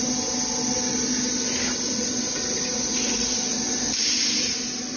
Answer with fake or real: real